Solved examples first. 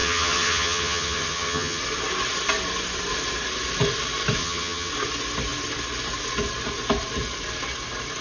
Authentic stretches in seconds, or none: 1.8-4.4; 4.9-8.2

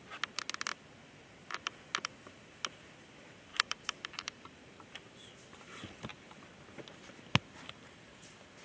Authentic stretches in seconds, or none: 0.0-3.5; 4.5-8.6

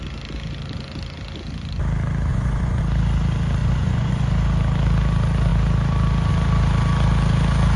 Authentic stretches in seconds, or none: 0.0-2.3; 2.8-3.6; 4.3-7.8

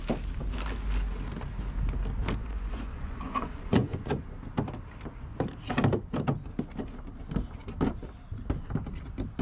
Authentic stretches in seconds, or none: 0.0-2.4; 4.2-9.4

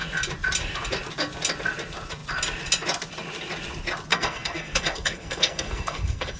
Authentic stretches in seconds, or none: 0.0-4.1

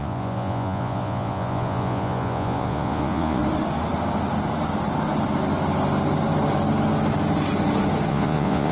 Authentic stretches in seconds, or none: 3.4-8.1

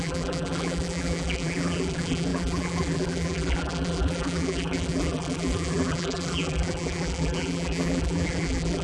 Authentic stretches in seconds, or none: none

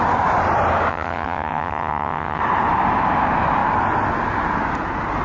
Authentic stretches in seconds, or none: 0.0-0.9; 2.4-5.2